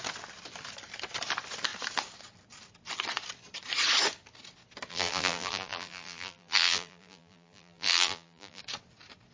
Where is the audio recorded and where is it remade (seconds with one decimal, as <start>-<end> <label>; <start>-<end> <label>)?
0.0-4.9 recorded; 4.9-8.6 remade; 8.6-9.3 recorded